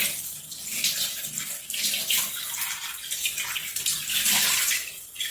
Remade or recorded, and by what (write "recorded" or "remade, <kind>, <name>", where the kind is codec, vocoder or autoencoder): recorded